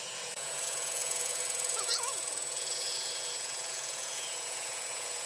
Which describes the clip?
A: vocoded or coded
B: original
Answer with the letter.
A